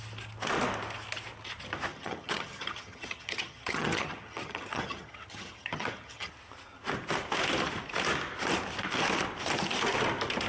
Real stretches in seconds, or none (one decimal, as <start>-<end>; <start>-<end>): 0.0-1.9; 6.3-10.5